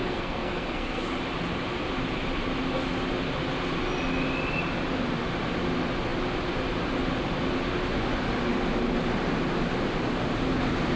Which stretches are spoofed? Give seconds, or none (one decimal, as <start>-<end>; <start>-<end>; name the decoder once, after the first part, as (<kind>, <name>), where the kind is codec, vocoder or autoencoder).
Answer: 0.0-1.1 (codec, SNAC)